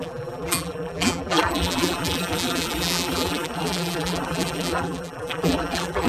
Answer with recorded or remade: remade